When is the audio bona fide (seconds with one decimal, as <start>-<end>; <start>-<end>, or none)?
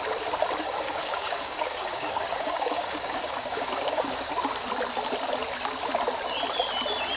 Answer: 0.0-0.6; 4.3-7.2